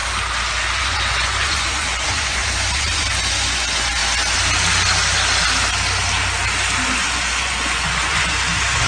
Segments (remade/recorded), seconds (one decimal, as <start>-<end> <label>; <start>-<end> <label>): 0.0-0.8 recorded; 0.8-4.0 remade; 4.0-7.0 recorded; 7.0-8.9 remade